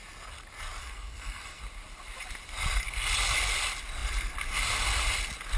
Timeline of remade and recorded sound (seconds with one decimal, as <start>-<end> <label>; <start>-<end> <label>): 0.0-0.8 recorded; 0.8-1.6 remade; 1.6-5.6 recorded